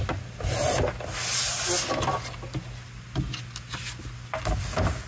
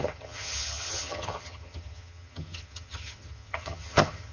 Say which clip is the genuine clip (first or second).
first